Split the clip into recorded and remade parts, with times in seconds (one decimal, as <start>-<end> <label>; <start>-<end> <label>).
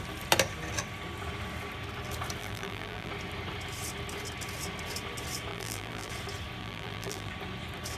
0.0-2.4 recorded; 2.4-3.1 remade; 3.1-5.5 recorded; 5.5-6.1 remade; 6.1-6.6 recorded; 6.6-7.3 remade; 7.3-8.0 recorded